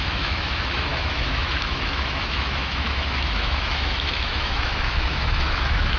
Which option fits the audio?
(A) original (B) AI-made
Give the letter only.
B